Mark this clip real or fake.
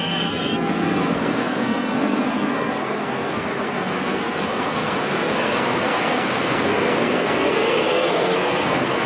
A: fake